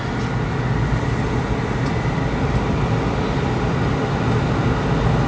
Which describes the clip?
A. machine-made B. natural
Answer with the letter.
B